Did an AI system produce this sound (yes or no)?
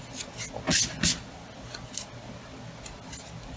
no